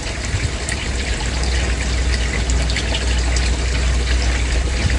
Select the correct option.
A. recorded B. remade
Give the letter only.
A